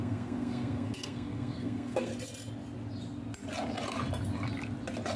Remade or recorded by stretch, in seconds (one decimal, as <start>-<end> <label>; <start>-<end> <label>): 0.0-2.1 remade; 2.1-5.2 recorded